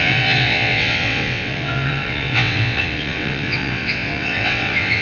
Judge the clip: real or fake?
fake